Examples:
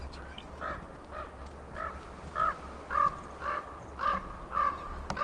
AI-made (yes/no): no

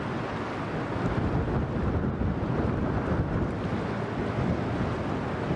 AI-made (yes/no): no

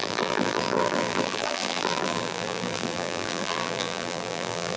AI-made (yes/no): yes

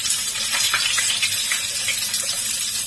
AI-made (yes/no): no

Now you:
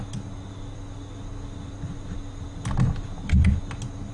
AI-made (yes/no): no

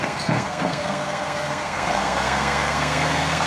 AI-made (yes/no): yes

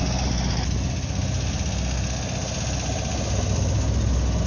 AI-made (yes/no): no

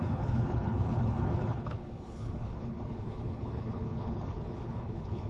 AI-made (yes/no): yes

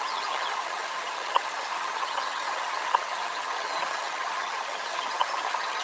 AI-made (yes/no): yes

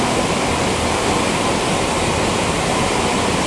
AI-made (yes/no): no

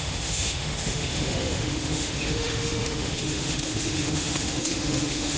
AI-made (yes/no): yes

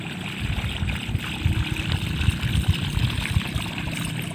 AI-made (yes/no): no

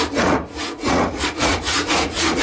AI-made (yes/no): yes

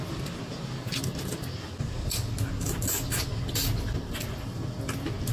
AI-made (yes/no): no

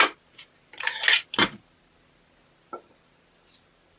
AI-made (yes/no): no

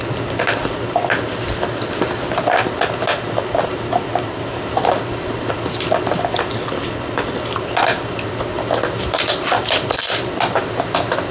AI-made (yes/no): no